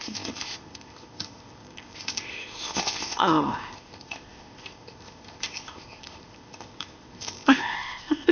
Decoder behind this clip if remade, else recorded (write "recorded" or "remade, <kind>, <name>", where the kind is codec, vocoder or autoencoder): remade, codec, ZipCodec